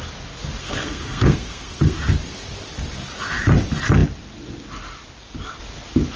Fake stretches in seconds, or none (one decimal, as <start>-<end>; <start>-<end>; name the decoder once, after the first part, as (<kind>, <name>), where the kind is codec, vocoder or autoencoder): 0.6-2.0 (codec, SNAC)